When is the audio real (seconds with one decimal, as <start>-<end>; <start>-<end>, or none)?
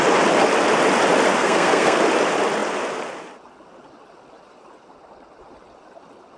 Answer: 0.0-1.4; 2.0-6.4